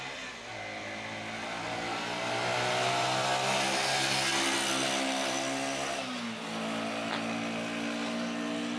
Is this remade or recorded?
recorded